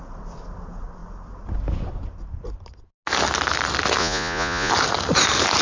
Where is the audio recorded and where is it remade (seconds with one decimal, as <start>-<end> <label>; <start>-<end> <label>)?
0.0-4.0 recorded; 4.0-4.7 remade; 4.7-5.6 recorded